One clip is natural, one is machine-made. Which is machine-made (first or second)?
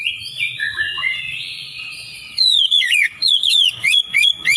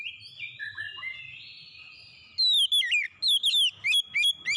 first